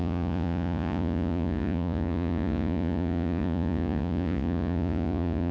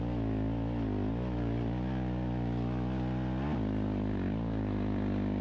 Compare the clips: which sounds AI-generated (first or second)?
first